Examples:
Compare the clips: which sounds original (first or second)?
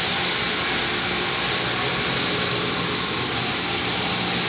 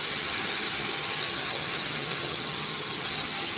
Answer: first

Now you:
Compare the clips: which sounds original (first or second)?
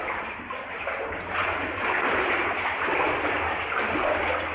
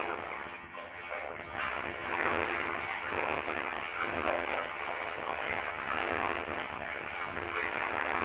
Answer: first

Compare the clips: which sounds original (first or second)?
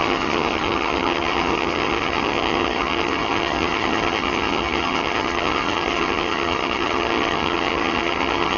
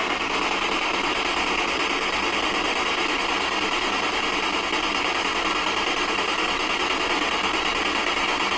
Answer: second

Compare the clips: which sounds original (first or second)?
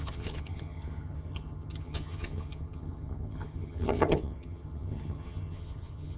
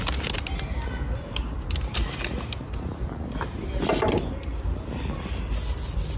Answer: second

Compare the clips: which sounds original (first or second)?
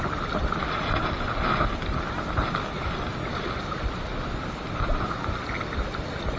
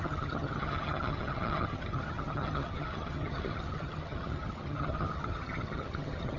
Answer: first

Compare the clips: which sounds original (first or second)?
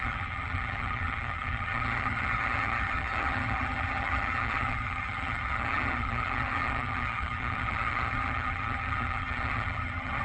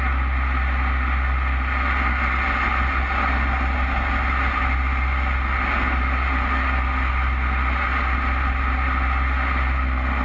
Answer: second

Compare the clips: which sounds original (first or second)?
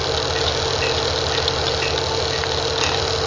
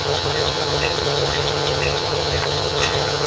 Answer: first